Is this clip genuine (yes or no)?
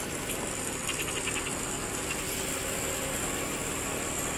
yes